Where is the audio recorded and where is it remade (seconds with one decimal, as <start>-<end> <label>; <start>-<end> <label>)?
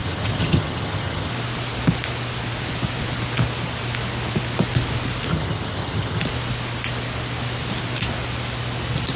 0.0-1.3 remade; 1.3-5.3 recorded; 5.3-6.2 remade; 6.2-9.2 recorded